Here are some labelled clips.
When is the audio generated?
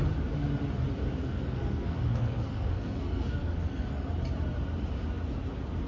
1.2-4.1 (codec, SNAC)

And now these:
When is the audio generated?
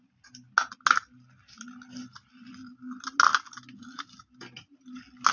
none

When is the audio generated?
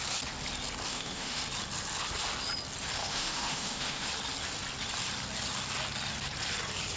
0.9-1.4 (autoencoder, DAC-VAE); 3.0-4.1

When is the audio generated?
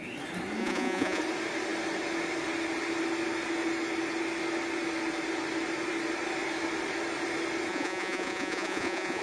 0.6-1.2 (vocoder, Vocos); 7.7-9.2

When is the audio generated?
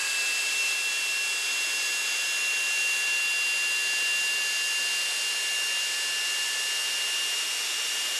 0.0-1.2 (vocoder, BigVGAN v2)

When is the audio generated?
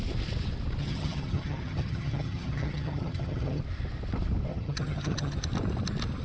0.8-3.6 (vocoder, HiFi-GAN); 4.5-5.4